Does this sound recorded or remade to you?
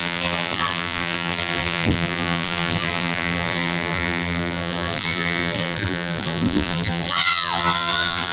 remade